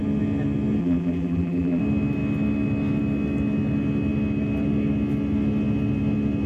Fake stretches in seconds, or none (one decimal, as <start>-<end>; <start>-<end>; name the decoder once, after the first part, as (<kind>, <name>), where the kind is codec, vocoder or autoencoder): 0.8-1.8 (vocoder, BigVGAN v2)